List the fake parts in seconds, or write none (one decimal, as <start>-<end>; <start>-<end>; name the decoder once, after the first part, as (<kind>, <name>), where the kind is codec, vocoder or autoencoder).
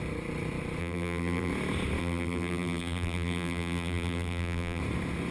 0.8-1.5 (vocoder, BigVGAN v2); 2.0-4.8